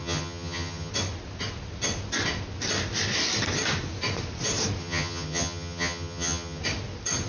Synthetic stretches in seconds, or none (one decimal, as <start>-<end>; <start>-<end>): 0.0-0.9; 4.8-6.6

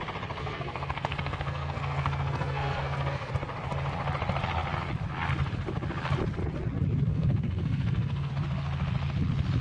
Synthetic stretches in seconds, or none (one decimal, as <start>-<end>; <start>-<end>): 0.4-3.3; 7.1-8.3

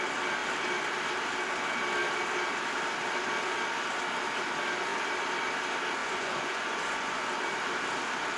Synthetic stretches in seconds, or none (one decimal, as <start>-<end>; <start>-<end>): 6.0-7.4

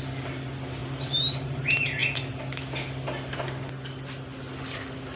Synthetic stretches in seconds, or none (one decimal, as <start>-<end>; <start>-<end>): 0.8-1.6

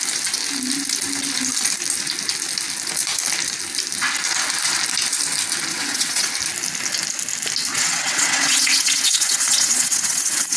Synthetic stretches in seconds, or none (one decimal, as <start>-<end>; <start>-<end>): 5.7-6.3; 7.7-10.6